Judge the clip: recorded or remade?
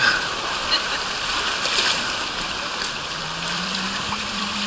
remade